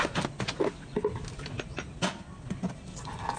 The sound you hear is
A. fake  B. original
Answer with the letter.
B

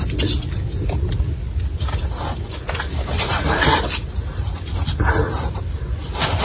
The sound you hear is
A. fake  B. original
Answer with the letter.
B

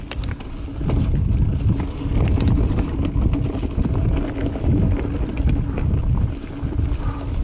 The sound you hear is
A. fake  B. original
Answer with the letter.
B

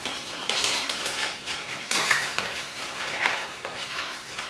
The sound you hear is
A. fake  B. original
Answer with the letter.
A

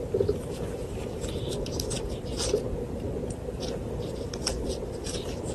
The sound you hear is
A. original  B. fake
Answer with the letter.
A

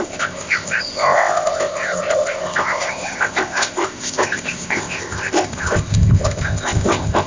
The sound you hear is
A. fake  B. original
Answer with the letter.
A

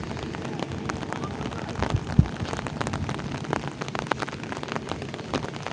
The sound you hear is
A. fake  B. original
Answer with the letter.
B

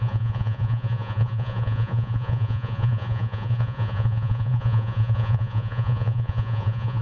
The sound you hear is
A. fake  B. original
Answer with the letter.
A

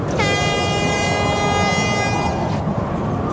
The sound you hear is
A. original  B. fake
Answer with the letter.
A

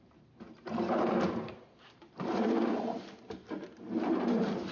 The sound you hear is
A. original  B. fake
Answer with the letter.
B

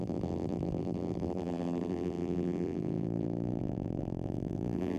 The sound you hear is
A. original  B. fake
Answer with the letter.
B